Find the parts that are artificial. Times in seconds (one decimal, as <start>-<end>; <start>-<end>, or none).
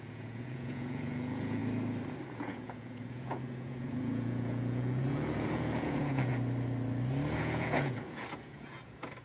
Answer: 0.0-1.6; 2.3-6.3; 7.4-9.2